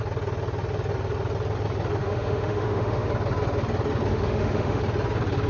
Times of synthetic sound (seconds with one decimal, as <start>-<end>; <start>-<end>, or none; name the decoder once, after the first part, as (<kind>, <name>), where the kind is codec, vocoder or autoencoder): 2.0-3.1 (autoencoder, DAC-VAE); 4.1-4.8